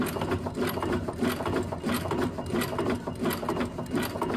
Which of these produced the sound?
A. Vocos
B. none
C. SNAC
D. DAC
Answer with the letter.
B